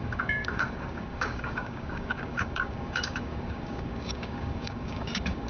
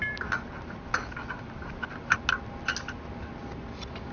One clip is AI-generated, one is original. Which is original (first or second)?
second